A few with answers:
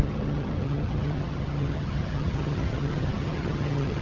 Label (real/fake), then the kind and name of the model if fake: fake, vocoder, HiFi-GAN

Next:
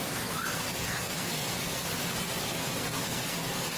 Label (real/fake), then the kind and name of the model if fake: fake, codec, SNAC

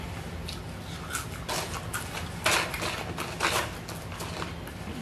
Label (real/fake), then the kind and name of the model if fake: real